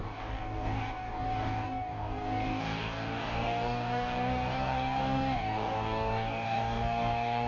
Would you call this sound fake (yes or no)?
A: yes